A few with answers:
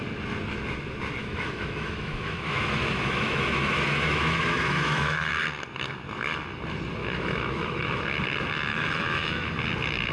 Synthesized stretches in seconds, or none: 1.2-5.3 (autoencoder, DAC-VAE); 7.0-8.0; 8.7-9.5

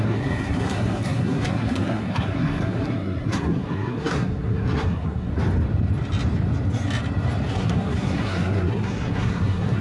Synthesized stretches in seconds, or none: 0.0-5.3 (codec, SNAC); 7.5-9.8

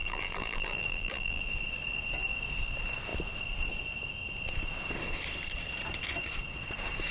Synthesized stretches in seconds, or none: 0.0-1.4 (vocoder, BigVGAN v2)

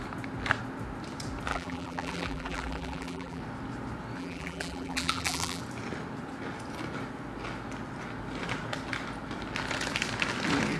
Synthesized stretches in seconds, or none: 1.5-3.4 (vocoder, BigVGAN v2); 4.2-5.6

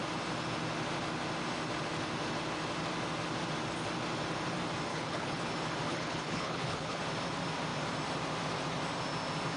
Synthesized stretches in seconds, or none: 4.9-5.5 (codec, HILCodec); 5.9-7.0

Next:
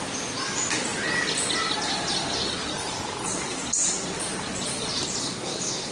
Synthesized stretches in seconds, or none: 5.2-5.9 (codec, SNAC)

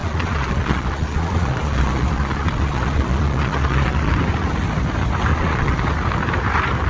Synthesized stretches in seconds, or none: 0.0-4.1 (vocoder, Vocos); 5.3-5.8

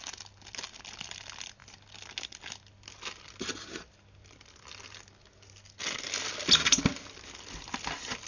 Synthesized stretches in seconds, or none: none